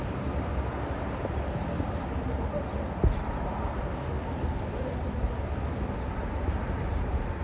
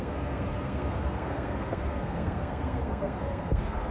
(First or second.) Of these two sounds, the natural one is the first